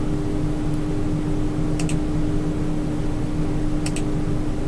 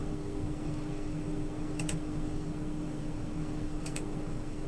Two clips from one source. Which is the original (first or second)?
first